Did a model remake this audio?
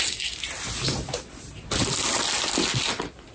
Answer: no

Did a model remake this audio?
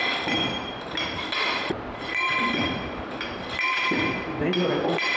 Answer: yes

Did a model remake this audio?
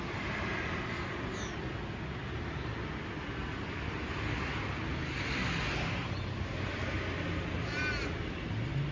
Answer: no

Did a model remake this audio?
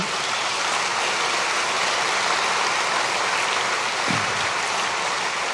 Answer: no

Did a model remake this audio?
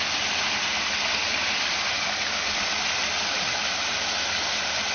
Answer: no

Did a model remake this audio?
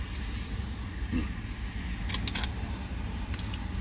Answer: no